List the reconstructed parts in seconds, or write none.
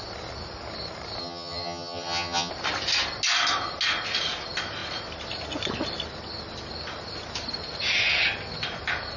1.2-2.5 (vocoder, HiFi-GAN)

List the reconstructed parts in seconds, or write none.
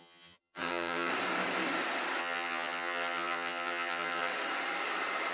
0.0-1.1 (vocoder, HiFi-GAN); 2.2-4.3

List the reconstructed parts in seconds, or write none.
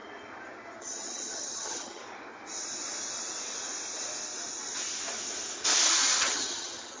0.8-2.0 (vocoder, HiFi-GAN); 6.2-7.0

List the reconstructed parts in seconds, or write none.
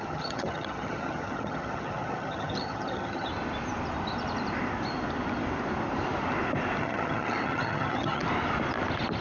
0.0-3.3 (vocoder, HiFi-GAN); 6.8-8.2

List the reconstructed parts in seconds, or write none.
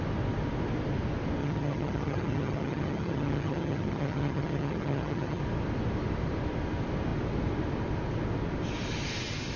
1.4-5.4 (vocoder, HiFi-GAN)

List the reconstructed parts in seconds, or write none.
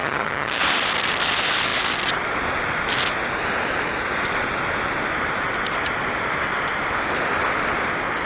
0.0-0.6 (vocoder, HiFi-GAN)